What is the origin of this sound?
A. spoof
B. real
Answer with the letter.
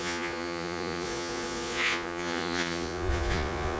A